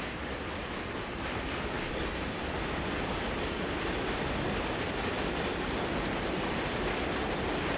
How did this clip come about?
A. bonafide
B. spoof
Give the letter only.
A